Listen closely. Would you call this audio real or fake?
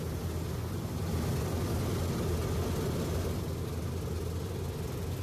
real